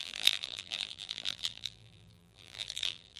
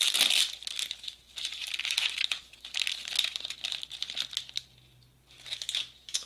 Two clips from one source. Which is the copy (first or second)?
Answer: first